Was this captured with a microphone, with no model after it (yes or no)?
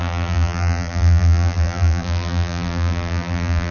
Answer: no